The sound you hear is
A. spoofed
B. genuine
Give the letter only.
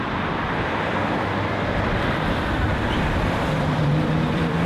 A